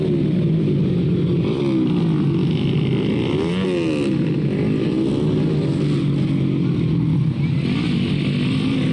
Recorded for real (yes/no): yes